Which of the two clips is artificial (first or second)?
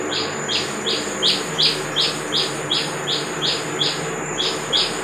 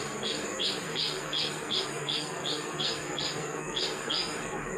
second